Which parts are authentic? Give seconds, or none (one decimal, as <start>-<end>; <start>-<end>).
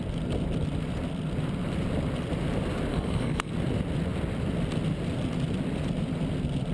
0.0-2.9; 3.5-6.7